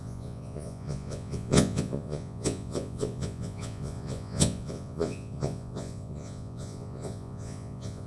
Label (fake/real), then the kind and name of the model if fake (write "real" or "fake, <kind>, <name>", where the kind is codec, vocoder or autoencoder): fake, vocoder, Vocos